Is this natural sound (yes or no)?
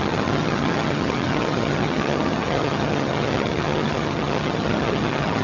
no